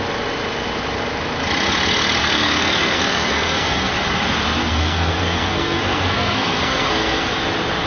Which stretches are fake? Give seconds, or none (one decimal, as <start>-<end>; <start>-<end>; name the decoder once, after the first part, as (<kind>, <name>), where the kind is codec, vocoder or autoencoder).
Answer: 2.2-3.9 (codec, SNAC); 4.6-7.3